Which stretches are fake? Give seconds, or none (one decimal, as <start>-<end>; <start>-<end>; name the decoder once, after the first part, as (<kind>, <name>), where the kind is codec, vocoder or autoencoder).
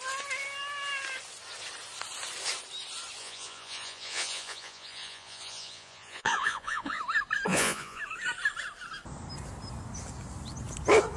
3.2-7.0 (vocoder, Vocos); 7.5-8.0